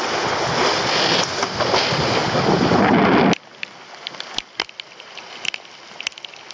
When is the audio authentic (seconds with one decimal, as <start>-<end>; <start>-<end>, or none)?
0.0-6.5

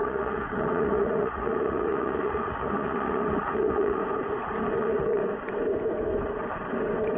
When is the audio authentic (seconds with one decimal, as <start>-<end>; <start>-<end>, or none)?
4.0-4.8; 5.2-7.2

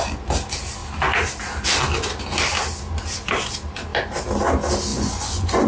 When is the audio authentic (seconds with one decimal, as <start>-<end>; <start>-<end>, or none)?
0.0-4.9